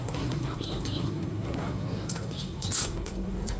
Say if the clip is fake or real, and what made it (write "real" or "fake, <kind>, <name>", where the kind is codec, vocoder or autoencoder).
fake, codec, SNAC